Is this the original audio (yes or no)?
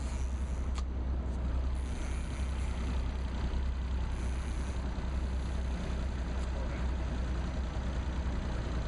yes